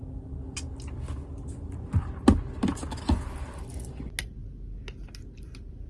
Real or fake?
real